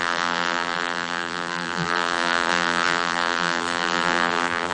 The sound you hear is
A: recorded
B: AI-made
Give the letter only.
B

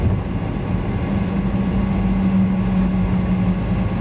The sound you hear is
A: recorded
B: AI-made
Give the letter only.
A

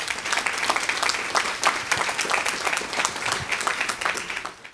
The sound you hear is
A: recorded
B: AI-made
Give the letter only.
A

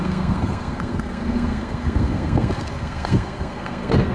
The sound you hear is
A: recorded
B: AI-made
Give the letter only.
B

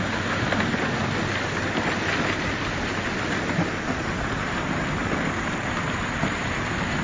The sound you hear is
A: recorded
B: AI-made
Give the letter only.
A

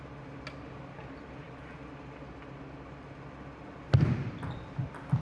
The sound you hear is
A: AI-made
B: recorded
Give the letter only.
B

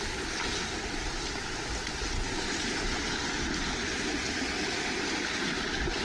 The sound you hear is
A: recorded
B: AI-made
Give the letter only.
A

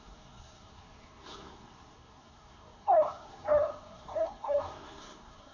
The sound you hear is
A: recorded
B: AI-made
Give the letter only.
B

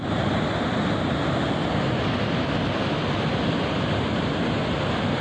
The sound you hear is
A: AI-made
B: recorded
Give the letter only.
B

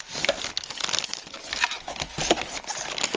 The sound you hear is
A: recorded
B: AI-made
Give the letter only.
A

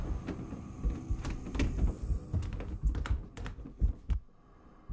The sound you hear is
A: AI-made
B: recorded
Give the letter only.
B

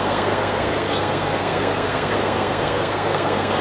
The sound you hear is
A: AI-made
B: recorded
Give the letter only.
A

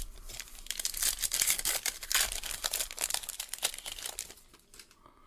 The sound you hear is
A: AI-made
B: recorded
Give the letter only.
A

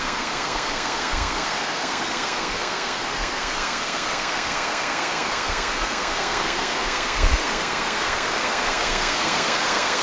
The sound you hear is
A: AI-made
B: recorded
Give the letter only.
A